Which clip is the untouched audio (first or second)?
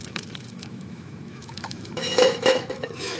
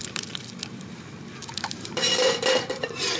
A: second